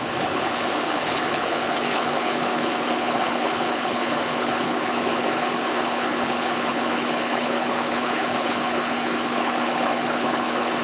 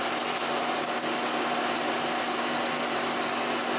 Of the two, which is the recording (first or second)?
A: second